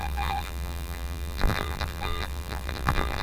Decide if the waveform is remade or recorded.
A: remade